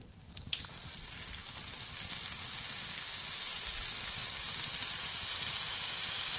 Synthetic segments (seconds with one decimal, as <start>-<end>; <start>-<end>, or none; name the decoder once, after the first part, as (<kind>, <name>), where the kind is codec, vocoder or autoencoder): none